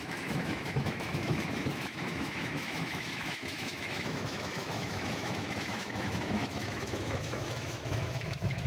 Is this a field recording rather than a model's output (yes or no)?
no